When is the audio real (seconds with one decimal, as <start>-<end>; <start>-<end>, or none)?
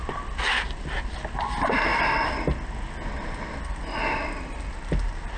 0.0-5.4